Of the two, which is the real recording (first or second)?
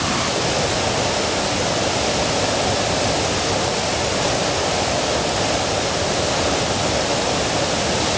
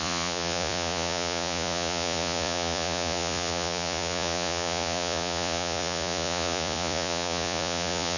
first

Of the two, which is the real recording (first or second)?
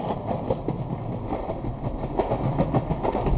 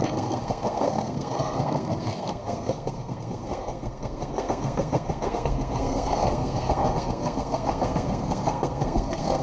first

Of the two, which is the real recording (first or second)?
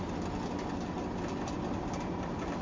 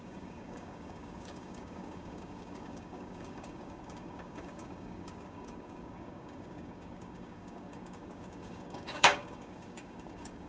first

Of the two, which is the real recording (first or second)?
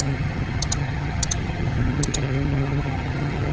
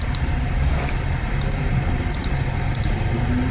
second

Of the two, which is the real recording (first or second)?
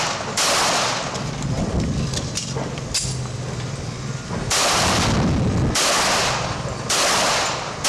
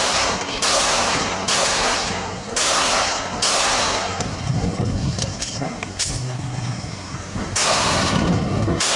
first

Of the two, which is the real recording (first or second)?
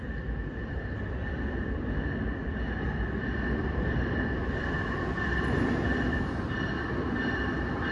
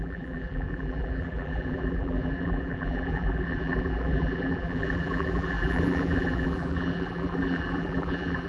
first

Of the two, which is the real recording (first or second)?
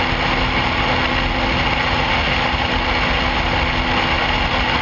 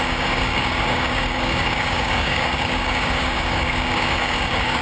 first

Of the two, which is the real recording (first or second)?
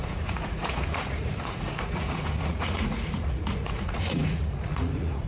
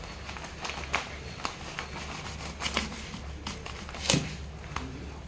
second